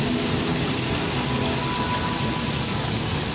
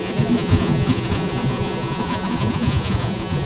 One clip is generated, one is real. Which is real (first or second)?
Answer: first